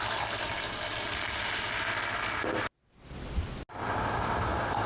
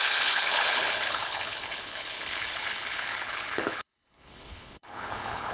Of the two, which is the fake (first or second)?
second